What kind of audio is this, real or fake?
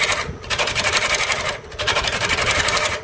real